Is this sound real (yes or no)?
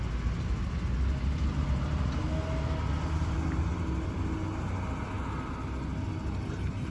yes